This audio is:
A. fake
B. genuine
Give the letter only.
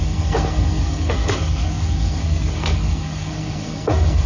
A